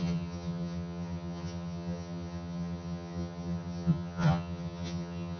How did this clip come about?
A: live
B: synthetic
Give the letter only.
B